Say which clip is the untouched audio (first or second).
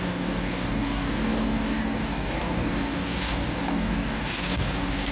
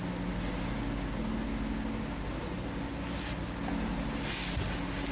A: second